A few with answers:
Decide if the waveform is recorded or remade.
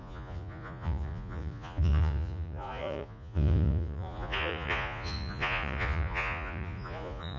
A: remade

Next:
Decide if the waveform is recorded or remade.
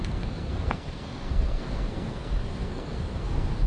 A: remade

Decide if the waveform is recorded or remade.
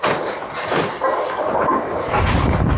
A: recorded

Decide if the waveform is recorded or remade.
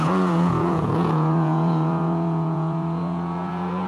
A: remade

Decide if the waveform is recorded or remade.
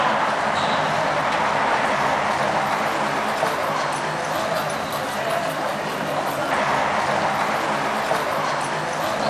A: recorded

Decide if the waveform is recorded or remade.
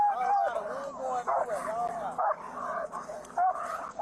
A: recorded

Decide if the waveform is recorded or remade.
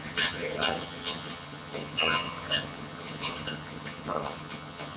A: remade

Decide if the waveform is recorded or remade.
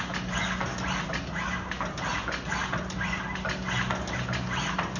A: recorded